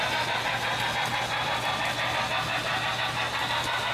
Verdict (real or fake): real